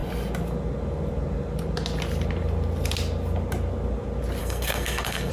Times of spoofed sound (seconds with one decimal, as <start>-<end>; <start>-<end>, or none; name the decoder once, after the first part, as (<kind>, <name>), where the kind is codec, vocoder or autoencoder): 4.4-5.3 (codec, SNAC)